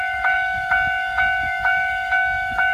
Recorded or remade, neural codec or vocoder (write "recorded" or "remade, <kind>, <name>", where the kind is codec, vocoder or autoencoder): remade, autoencoder, DAC-VAE